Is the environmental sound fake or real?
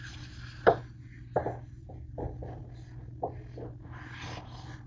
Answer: real